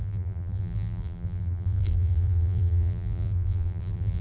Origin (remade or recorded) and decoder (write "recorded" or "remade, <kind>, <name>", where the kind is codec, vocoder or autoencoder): remade, vocoder, BigVGAN v2